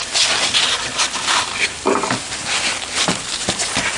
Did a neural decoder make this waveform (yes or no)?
no